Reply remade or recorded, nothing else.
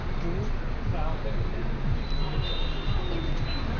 recorded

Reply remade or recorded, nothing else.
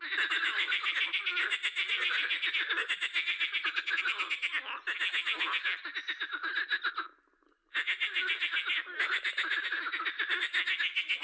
recorded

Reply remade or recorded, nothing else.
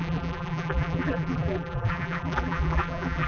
remade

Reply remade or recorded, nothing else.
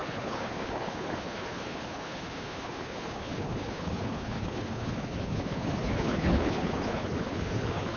remade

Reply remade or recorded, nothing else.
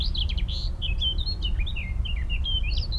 recorded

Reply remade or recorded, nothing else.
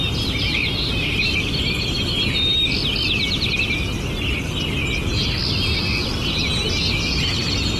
recorded